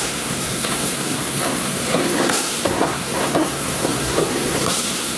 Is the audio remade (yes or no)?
yes